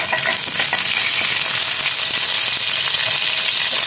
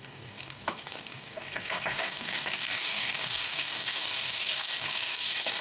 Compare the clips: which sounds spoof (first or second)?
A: second